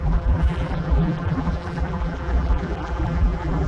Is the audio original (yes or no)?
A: no